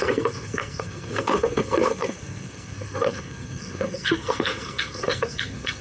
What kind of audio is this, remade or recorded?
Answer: remade